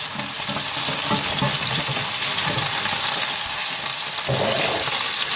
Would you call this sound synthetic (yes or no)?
no